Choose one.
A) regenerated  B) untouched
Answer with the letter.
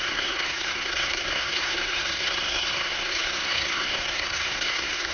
A